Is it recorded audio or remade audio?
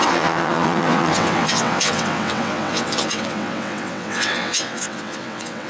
remade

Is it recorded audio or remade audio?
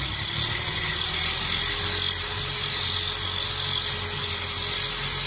recorded